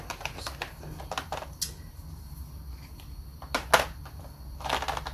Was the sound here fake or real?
real